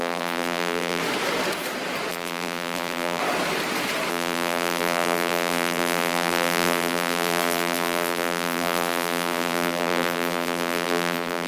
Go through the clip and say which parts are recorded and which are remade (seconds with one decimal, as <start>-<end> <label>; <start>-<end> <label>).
0.0-1.0 remade; 1.0-2.1 recorded; 2.1-3.2 remade; 3.2-4.1 recorded; 4.1-11.5 remade